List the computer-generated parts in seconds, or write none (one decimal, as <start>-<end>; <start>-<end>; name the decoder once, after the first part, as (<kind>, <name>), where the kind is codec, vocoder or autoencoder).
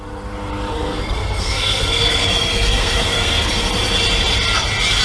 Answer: 0.7-3.7 (codec, SNAC)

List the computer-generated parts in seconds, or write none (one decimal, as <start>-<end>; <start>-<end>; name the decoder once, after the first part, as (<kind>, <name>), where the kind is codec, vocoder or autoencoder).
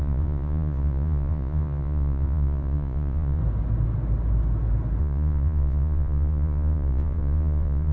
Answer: 0.0-3.4 (vocoder, Vocos); 5.0-7.9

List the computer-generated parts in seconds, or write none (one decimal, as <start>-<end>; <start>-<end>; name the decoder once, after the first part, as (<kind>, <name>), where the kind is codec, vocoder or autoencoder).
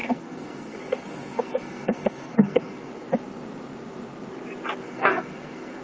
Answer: 0.0-2.9 (codec, SNAC); 4.8-5.8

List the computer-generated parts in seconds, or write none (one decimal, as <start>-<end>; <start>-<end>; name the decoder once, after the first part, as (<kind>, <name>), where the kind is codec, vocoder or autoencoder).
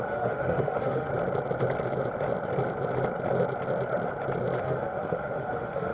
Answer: 0.0-1.1 (autoencoder, DAC-VAE); 4.6-5.9